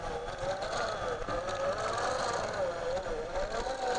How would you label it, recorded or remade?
recorded